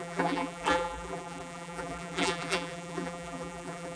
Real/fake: fake